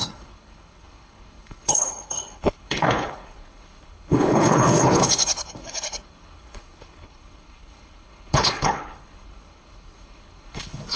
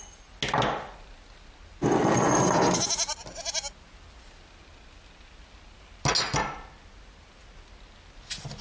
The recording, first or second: second